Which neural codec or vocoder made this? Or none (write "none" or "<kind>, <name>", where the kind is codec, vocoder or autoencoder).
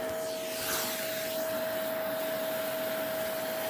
none